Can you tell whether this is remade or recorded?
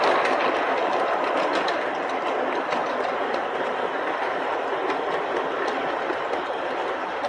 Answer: remade